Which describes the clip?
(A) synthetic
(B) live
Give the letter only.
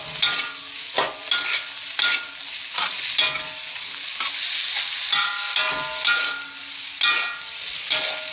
B